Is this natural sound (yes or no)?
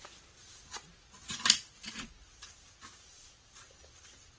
yes